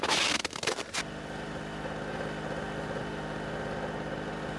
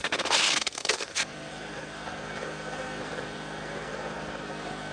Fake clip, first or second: second